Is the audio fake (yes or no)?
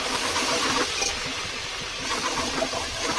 no